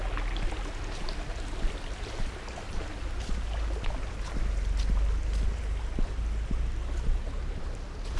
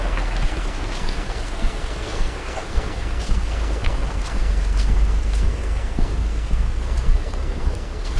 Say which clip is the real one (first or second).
first